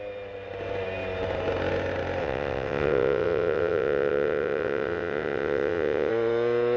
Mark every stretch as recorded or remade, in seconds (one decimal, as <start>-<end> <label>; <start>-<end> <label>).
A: 0.0-2.2 recorded; 2.2-6.1 remade; 6.1-6.8 recorded